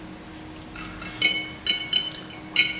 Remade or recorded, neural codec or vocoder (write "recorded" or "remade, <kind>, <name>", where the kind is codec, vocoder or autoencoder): recorded